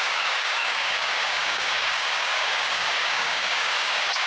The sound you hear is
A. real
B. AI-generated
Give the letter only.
B